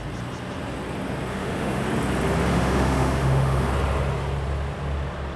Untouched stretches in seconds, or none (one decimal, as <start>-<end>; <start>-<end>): 0.0-1.3; 1.8-2.5; 3.7-5.4